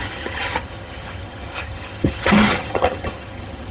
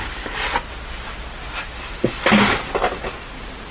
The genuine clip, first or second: second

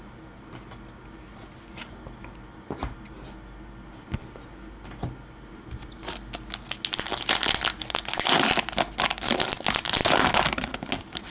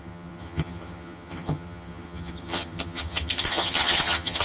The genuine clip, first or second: first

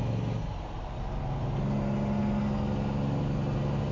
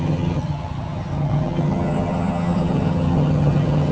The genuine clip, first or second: first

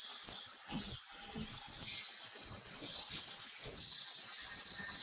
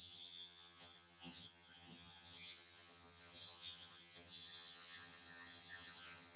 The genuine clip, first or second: first